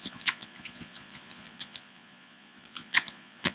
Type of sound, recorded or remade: remade